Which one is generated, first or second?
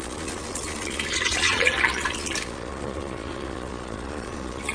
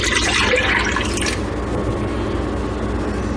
first